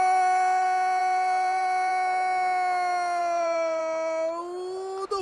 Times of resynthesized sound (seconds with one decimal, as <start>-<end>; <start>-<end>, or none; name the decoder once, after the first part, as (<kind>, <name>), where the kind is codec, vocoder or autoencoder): 1.0-1.9 (vocoder, BigVGAN v2); 3.2-3.8